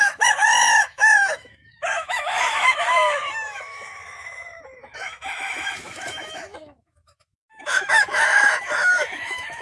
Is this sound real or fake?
fake